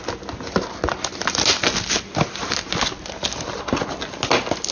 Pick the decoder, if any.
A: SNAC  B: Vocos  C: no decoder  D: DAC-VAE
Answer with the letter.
C